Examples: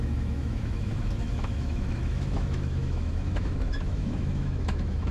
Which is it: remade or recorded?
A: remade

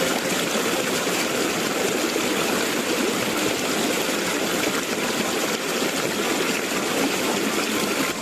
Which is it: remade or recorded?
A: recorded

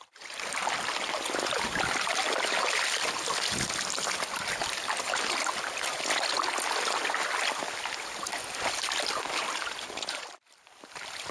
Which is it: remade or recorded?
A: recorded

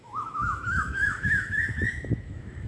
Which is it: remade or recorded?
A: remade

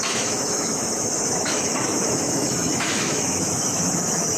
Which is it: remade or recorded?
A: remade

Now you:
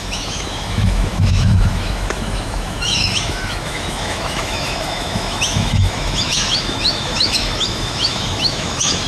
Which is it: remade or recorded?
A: remade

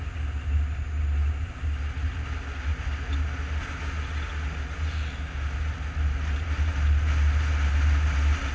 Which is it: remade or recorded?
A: recorded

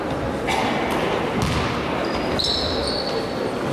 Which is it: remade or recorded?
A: recorded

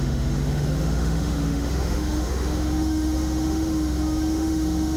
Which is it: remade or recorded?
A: remade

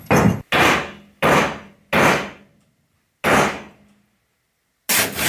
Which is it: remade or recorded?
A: recorded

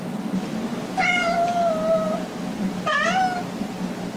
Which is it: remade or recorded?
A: recorded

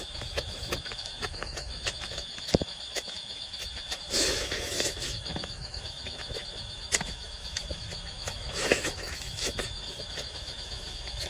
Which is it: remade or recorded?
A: remade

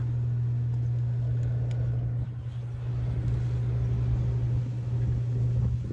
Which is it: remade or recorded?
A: recorded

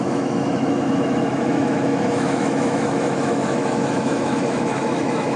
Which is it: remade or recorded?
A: remade